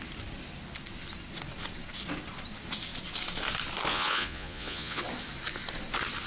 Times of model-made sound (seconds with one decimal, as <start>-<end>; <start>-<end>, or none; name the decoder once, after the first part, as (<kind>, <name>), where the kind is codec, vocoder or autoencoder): 3.9-5.0 (vocoder, Vocos)